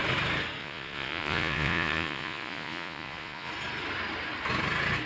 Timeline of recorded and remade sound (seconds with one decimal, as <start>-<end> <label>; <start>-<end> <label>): 0.0-0.6 recorded; 0.6-3.5 remade; 3.5-5.1 recorded